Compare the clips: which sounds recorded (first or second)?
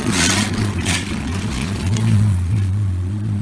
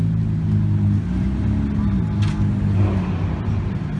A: second